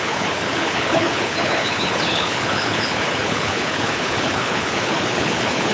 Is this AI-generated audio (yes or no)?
yes